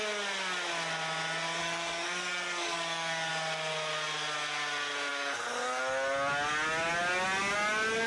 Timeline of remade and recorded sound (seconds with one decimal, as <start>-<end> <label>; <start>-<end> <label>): 0.0-1.6 recorded; 1.6-3.3 remade; 3.3-5.1 recorded; 5.1-5.8 remade; 5.8-8.1 recorded

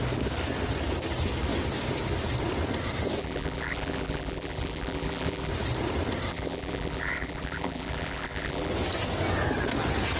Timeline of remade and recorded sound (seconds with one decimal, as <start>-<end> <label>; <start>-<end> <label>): 0.0-3.2 recorded; 3.2-5.5 remade; 5.5-6.3 recorded; 6.3-8.7 remade; 8.7-10.2 recorded

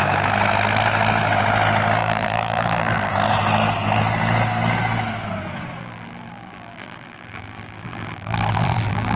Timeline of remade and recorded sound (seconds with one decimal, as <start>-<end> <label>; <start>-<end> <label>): 0.0-2.0 recorded; 2.0-3.1 remade; 3.1-5.8 recorded; 5.8-9.2 remade

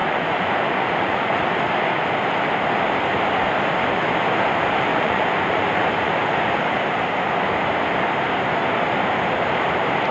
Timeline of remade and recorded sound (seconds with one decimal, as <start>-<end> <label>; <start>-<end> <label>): 0.0-1.4 remade; 1.4-4.9 recorded; 4.9-6.2 remade; 6.2-10.1 recorded

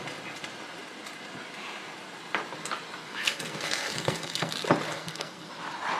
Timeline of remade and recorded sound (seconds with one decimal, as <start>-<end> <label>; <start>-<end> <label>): 0.0-3.0 recorded; 3.0-4.5 remade; 4.5-4.9 recorded; 4.9-5.5 remade; 5.5-6.0 recorded

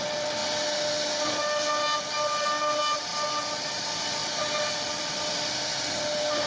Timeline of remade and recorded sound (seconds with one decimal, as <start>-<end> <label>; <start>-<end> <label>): 0.0-6.5 recorded